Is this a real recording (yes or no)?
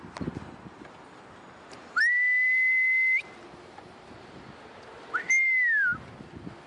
yes